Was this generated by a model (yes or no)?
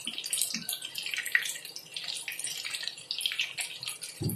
no